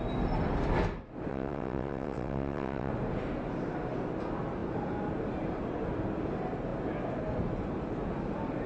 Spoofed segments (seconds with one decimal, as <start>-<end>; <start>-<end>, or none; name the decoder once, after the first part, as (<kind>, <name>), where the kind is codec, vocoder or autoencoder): 1.3-2.9 (vocoder, WaveNeXt)